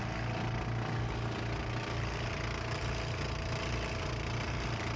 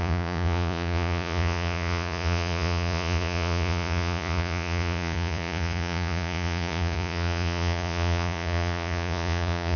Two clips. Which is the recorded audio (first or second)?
first